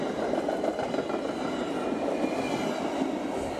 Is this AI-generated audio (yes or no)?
no